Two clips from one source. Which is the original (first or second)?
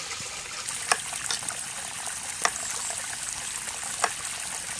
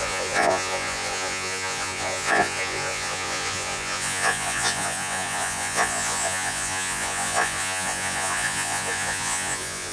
first